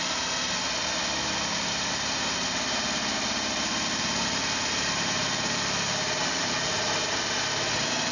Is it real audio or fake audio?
real